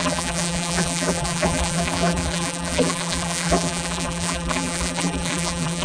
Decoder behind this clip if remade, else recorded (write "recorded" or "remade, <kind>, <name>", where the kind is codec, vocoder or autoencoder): remade, vocoder, BigVGAN v2